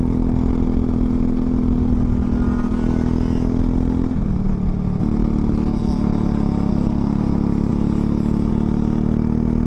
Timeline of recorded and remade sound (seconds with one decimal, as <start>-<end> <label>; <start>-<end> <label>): 0.0-6.7 recorded; 6.7-7.2 remade; 7.2-9.7 recorded